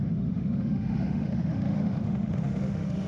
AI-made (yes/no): yes